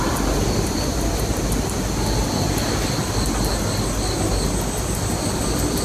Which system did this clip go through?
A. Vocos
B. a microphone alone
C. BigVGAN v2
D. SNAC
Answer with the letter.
B